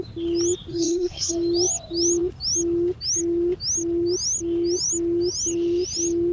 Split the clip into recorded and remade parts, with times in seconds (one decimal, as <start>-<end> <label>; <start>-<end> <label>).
0.0-0.7 recorded; 0.7-1.3 remade; 1.3-6.3 recorded